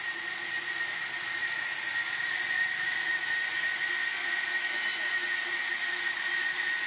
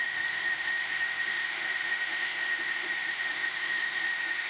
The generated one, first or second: second